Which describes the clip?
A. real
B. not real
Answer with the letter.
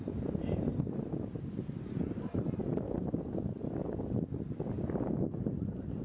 A